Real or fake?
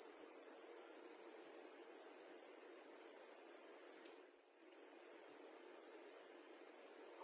fake